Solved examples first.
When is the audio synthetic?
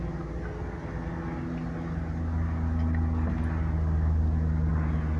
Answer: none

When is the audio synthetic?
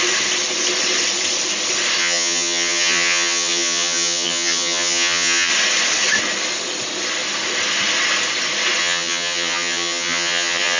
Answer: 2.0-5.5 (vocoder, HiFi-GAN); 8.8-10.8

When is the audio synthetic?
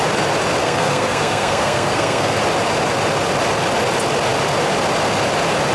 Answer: 0.6-2.4 (codec, SNAC)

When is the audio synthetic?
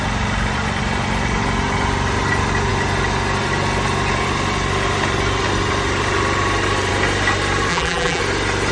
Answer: 7.7-8.2 (vocoder, BigVGAN v2)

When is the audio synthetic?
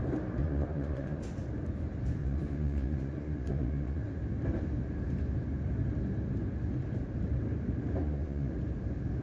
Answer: 0.4-1.2 (vocoder, Vocos); 2.2-4.0; 8.0-8.5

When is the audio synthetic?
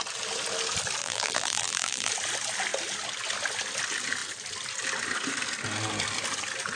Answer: 1.0-2.1 (vocoder, BigVGAN v2)